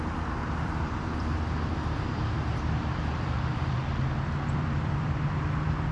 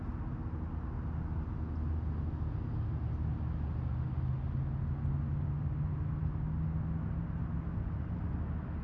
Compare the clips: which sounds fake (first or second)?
first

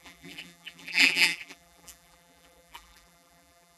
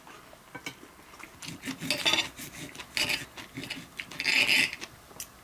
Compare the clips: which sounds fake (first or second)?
first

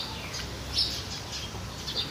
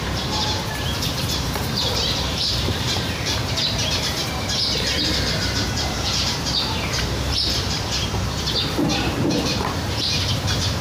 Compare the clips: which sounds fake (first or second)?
second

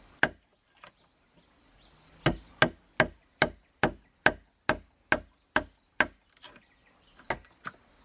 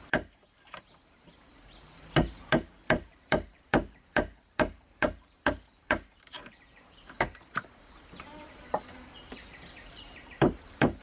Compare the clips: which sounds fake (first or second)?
second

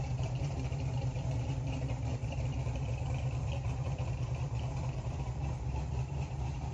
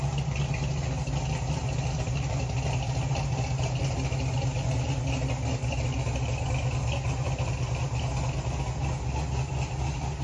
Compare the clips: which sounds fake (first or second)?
first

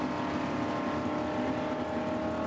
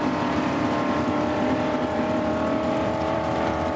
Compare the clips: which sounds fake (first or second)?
second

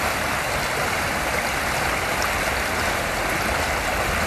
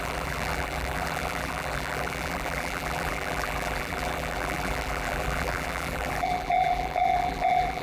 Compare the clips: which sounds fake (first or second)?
second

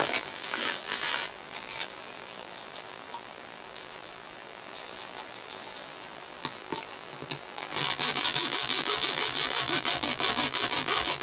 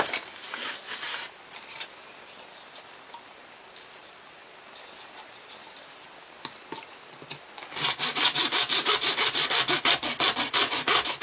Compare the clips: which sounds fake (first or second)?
first